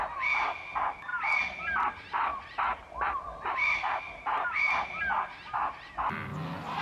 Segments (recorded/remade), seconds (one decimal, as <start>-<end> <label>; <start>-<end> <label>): 0.0-2.3 recorded; 2.3-5.0 remade; 5.0-6.8 recorded